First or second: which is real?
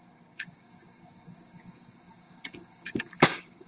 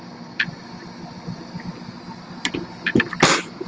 second